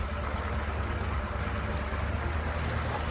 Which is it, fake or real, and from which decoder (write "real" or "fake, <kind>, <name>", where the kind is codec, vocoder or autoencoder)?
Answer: real